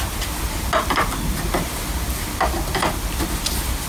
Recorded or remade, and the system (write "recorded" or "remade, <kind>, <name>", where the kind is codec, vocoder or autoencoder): recorded